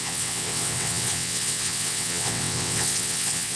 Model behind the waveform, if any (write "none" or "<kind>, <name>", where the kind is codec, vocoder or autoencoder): vocoder, WaveNeXt